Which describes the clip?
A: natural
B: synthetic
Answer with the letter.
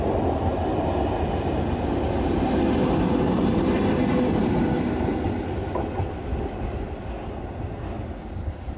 A